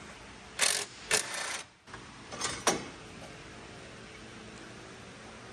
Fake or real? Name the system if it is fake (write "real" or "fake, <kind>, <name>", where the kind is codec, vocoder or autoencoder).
real